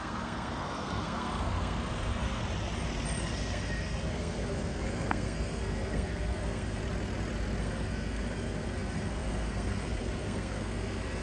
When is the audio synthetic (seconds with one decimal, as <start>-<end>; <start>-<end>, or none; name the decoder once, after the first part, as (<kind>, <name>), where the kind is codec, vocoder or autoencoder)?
0.0-2.4 (codec, SNAC); 3.2-6.8; 7.6-11.2